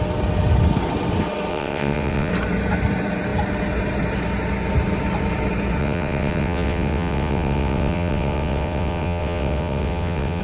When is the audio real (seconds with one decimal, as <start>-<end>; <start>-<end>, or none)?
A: 0.0-1.5; 2.3-5.8